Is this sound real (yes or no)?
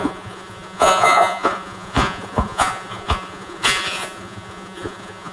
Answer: no